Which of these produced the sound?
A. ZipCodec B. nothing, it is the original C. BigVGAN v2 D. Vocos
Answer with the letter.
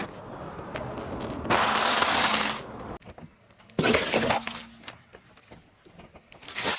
B